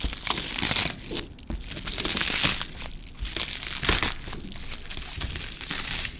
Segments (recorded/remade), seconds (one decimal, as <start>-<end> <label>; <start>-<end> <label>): 0.0-5.1 recorded; 5.1-6.2 remade